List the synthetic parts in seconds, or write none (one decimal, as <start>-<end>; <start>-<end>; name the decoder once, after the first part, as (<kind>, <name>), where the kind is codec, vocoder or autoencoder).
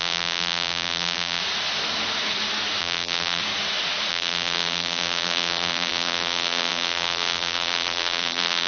0.0-1.4 (vocoder, BigVGAN v2); 2.8-3.4; 4.1-8.7